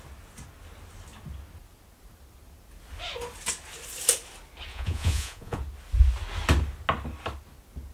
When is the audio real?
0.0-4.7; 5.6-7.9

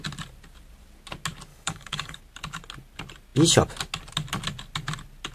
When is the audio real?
0.0-1.5; 2.2-5.3